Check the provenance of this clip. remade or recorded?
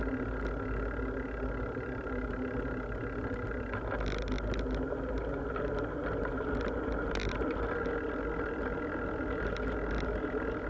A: recorded